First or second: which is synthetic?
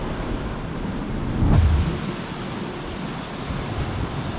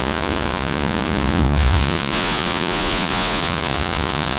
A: second